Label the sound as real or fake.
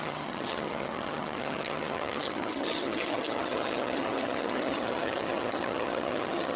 fake